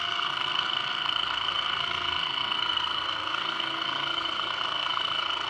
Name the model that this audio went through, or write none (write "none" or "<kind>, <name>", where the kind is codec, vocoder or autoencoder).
codec, SNAC